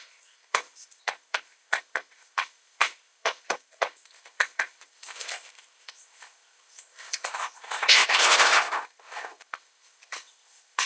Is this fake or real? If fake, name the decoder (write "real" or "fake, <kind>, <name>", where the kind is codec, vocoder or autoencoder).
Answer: fake, codec, ZipCodec